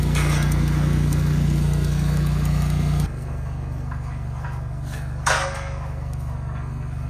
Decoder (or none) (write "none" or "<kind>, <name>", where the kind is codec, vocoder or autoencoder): codec, SNAC